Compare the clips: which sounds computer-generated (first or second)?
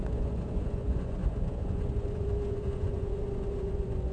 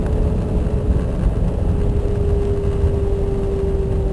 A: first